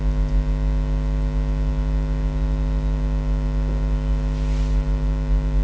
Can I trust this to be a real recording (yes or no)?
yes